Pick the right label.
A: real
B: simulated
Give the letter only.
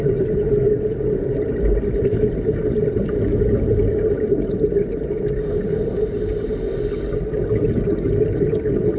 A